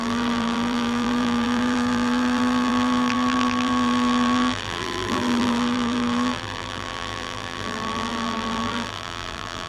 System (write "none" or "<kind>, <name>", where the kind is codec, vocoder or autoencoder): vocoder, BigVGAN v2